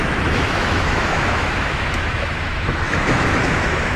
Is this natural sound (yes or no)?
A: no